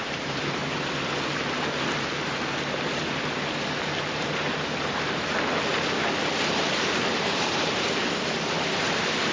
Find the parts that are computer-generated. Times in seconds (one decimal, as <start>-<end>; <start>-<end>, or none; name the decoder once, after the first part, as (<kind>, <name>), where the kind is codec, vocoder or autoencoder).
0.0-0.6 (vocoder, BigVGAN v2); 4.8-5.7; 6.4-9.3